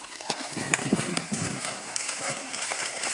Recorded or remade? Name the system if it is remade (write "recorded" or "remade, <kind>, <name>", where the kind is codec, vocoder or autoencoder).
remade, codec, SNAC